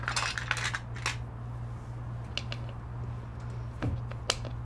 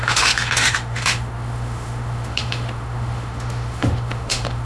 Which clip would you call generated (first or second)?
second